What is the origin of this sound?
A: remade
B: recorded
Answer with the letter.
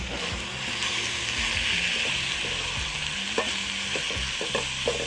B